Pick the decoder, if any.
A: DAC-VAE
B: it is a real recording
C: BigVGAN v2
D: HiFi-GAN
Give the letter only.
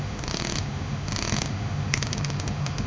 A